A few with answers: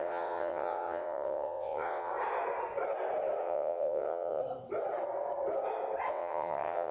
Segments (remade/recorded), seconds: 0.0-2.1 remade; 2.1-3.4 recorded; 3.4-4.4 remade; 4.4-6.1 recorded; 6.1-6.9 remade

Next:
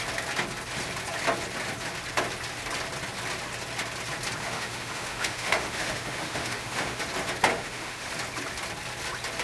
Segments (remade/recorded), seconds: 0.0-4.4 recorded; 4.4-7.0 remade; 7.0-7.5 recorded; 7.5-8.1 remade; 8.1-9.4 recorded

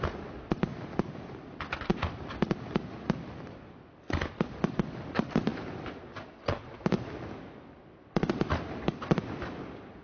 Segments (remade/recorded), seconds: 0.0-10.0 recorded

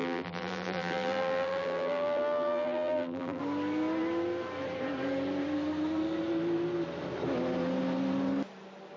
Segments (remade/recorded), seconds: 0.0-3.4 remade; 3.4-9.0 recorded

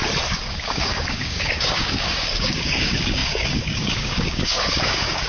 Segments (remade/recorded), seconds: 0.0-0.5 recorded; 0.5-5.3 remade